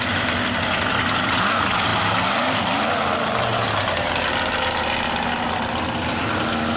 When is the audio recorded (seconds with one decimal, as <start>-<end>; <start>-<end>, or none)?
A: 0.0-6.8